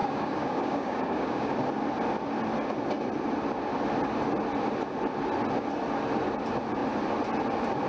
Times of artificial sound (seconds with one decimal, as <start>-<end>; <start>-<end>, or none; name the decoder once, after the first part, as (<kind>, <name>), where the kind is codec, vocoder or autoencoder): 0.0-1.5 (codec, DAC)